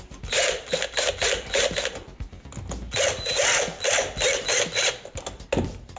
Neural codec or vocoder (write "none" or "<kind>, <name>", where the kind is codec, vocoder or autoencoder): none